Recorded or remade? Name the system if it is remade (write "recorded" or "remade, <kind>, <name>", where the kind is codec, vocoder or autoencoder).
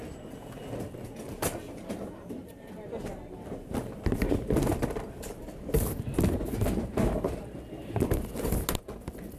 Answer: recorded